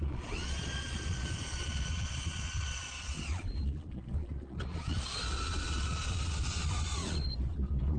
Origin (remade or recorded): remade